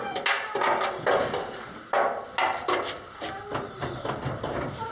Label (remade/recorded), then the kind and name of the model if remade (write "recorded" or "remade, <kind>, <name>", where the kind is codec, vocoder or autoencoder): recorded